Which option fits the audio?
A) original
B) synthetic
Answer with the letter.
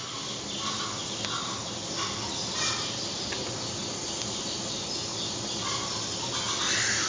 A